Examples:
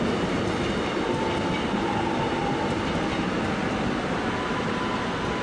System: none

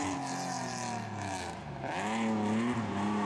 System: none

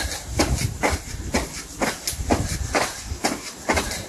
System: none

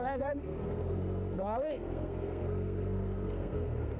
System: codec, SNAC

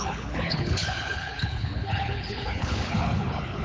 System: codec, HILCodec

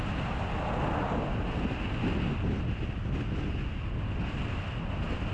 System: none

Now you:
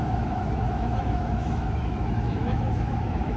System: autoencoder, DAC-VAE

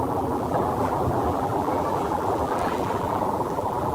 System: vocoder, BigVGAN v2